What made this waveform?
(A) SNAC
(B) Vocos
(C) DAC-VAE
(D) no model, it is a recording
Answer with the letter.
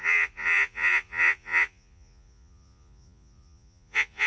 B